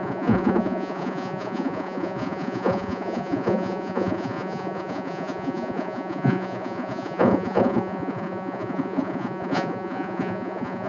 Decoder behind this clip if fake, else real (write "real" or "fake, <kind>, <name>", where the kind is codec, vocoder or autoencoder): fake, vocoder, Vocos